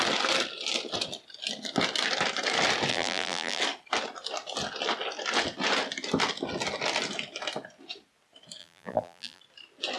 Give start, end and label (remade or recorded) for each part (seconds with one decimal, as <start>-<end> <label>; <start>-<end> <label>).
0.0-2.9 recorded; 2.9-3.6 remade; 3.6-8.6 recorded; 8.6-9.4 remade; 9.4-10.0 recorded